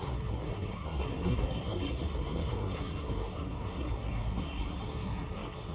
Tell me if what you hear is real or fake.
fake